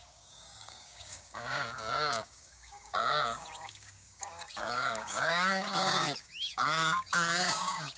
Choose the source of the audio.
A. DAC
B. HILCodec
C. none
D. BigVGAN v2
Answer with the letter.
A